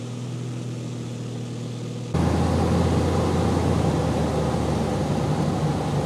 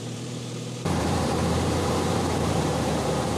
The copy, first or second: second